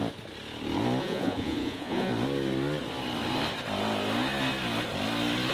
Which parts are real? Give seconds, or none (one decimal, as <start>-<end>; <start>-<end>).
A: 0.0-1.0; 2.1-5.5